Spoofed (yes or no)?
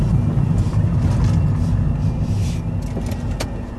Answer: no